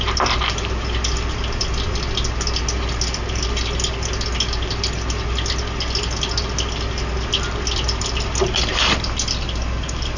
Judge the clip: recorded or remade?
recorded